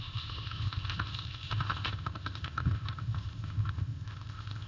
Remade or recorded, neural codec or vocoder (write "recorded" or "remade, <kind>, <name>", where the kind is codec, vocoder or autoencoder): remade, codec, ZipCodec